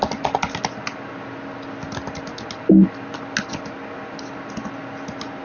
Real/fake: real